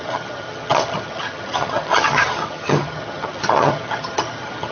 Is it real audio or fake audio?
fake